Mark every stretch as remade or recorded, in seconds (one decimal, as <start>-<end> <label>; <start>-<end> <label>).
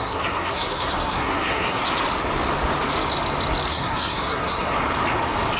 0.0-1.8 remade; 1.8-3.7 recorded; 3.7-4.7 remade; 4.7-5.6 recorded